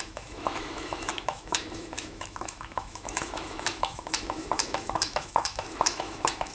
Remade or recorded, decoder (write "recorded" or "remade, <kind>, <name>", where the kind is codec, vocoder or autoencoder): remade, autoencoder, DAC-VAE